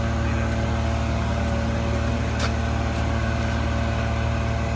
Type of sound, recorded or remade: recorded